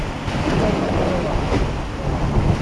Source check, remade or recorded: recorded